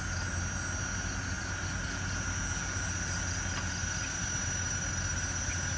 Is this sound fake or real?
real